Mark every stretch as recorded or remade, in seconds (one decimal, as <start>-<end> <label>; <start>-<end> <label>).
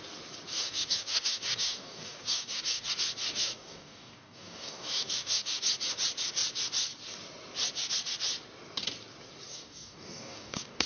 0.0-0.5 recorded; 0.5-2.9 remade; 2.9-3.3 recorded; 3.3-5.6 remade; 5.6-9.5 recorded; 9.5-10.9 remade